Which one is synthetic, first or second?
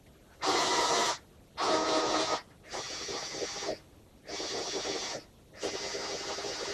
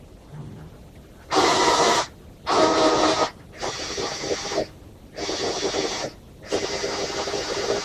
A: second